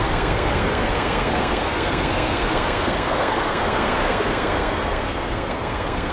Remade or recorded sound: remade